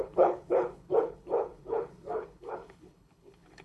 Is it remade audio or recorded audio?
remade